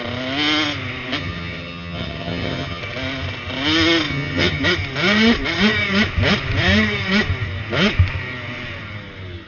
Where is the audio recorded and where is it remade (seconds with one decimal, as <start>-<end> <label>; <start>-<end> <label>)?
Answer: 0.0-1.2 recorded; 1.2-2.8 remade; 2.8-4.1 recorded; 4.1-4.6 remade; 4.6-9.5 recorded